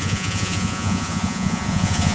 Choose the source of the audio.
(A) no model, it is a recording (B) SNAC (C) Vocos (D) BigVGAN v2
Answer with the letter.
C